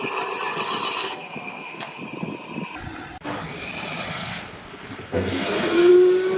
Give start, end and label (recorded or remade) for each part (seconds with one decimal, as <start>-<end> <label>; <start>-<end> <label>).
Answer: 0.0-1.0 recorded; 1.0-2.0 remade; 2.0-4.1 recorded; 4.1-5.9 remade; 5.9-6.4 recorded